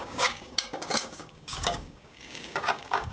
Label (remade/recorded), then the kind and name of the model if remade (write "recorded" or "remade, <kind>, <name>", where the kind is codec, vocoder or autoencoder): remade, codec, DAC